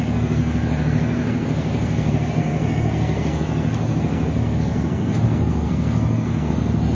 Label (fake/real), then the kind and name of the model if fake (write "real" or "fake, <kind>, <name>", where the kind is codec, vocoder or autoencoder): fake, codec, SNAC